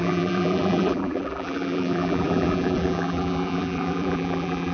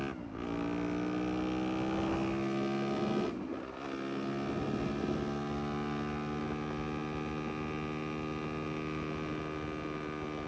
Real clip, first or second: second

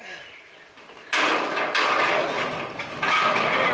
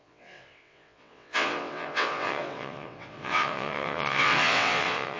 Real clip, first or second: first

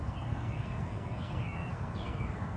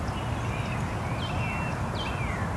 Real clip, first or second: second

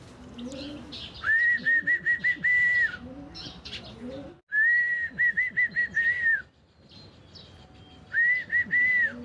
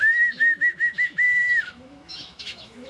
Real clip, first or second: first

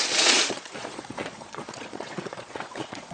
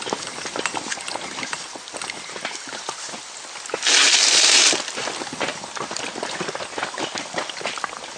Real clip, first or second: second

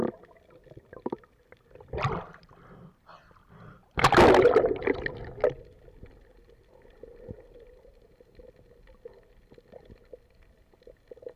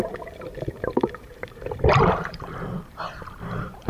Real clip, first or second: first